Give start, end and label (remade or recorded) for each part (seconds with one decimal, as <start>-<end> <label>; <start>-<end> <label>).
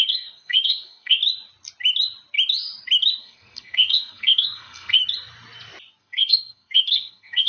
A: 0.0-1.2 remade; 1.2-3.2 recorded; 3.2-5.0 remade; 5.0-6.0 recorded; 6.0-7.5 remade